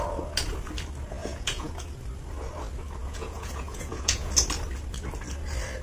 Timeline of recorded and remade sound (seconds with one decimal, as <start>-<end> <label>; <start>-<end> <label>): 0.0-1.2 recorded; 1.2-1.7 remade; 1.7-3.0 recorded; 3.0-4.3 remade; 4.3-5.8 recorded